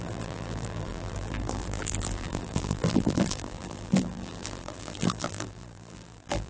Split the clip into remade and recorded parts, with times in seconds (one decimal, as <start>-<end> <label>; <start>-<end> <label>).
0.0-6.5 remade